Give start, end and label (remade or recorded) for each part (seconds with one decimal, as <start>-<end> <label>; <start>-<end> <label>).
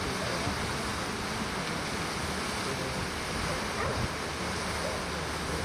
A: 0.0-5.6 recorded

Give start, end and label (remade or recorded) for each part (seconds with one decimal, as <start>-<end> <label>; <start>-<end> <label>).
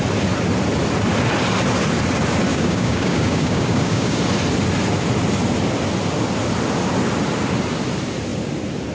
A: 0.0-2.5 recorded; 2.5-4.2 remade; 4.2-8.9 recorded